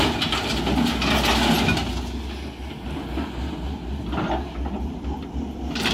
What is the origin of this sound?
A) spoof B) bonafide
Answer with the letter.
B